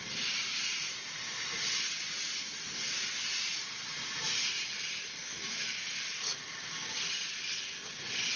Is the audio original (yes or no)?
yes